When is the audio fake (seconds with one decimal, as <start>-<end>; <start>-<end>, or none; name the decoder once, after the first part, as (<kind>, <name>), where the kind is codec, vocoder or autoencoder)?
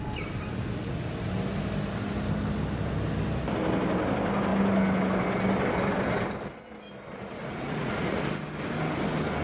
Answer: 7.4-8.2 (vocoder, Vocos)